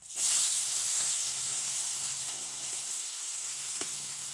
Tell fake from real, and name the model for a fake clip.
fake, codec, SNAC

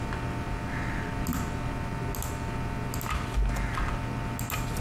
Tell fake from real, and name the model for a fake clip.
real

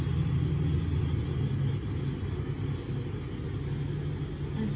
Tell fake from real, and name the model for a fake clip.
real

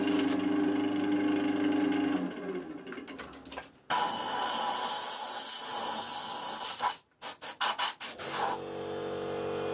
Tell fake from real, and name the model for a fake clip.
real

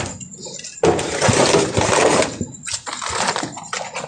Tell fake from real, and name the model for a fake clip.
real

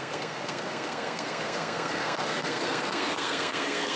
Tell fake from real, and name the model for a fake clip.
fake, codec, SNAC